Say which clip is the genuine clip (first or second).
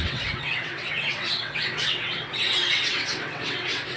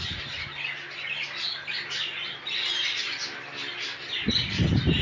second